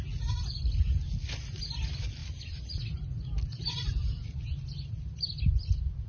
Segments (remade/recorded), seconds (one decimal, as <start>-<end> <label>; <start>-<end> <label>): 0.0-6.1 recorded